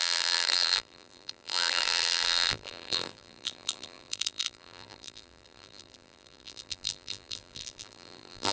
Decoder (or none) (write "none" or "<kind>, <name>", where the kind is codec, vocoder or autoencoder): vocoder, BigVGAN v2